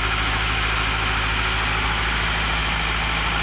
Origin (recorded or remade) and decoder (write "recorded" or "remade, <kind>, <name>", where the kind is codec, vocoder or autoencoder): recorded